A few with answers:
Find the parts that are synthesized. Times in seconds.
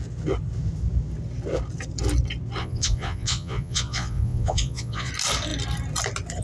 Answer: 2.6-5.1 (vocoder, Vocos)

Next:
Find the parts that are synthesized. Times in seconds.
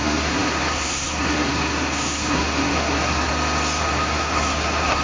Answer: 0.0-3.3 (codec, SNAC); 3.8-5.0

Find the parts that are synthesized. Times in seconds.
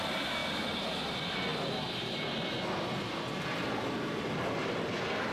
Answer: 0.0-0.4 (vocoder, BigVGAN v2); 1.1-3.6; 4.1-5.3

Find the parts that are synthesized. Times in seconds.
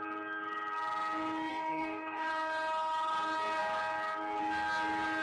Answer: 1.5-2.3 (codec, DAC)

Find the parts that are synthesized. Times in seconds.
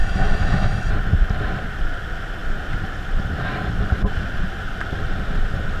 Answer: 0.0-0.9 (autoencoder, DAC-VAE)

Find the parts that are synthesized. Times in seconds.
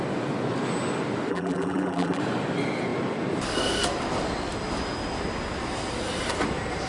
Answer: 1.3-2.2 (vocoder, BigVGAN v2)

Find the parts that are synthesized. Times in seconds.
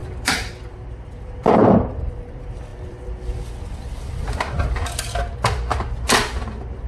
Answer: 0.0-5.7 (vocoder, BigVGAN v2)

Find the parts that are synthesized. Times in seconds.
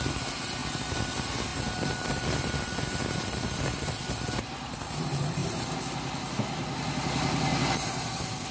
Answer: 0.6-1.1 (vocoder, BigVGAN v2); 1.5-3.0